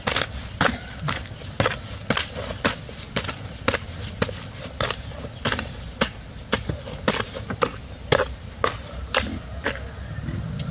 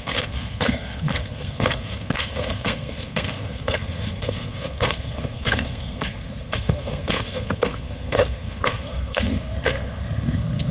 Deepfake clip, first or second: second